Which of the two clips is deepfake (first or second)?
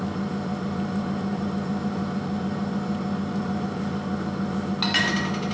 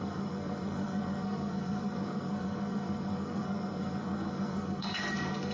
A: second